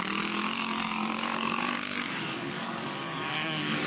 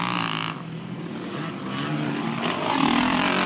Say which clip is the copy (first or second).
first